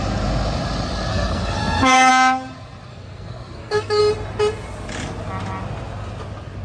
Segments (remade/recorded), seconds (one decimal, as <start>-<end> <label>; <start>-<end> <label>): 0.0-1.1 recorded; 1.1-2.1 remade; 2.1-2.9 recorded; 2.9-4.0 remade; 4.0-6.6 recorded